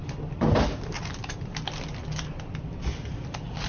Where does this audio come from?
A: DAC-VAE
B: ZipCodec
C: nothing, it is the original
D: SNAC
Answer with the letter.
C